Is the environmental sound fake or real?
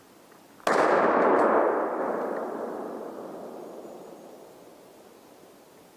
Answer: real